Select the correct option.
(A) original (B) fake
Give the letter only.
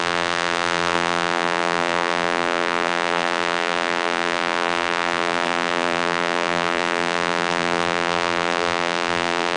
B